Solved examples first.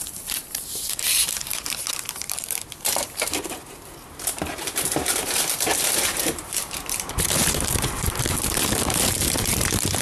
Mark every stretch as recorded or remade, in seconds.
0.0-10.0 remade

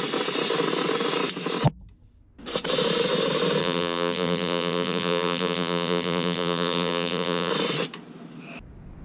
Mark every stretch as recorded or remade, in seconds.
0.0-3.6 recorded; 3.6-7.5 remade; 7.5-9.0 recorded

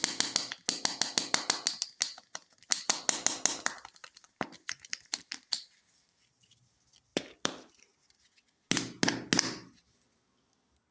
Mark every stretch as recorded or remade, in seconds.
0.0-4.0 recorded; 4.0-6.6 remade; 6.6-7.1 recorded; 7.1-7.7 remade; 7.7-10.9 recorded

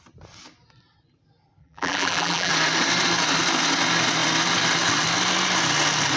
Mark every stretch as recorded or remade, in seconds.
0.0-1.6 recorded; 1.6-2.5 remade; 2.5-6.2 recorded